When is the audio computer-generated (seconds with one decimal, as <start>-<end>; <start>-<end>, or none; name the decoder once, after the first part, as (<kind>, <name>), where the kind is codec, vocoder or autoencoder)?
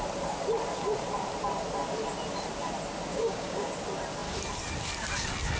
3.1-3.7 (codec, DAC)